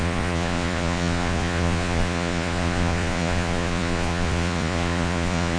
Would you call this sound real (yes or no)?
no